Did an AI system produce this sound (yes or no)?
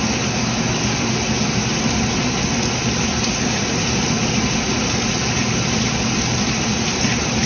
no